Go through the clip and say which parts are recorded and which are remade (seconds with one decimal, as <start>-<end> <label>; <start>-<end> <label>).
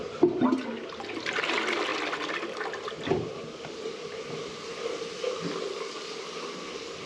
0.0-7.1 recorded